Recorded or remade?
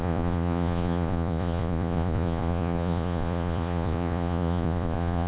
remade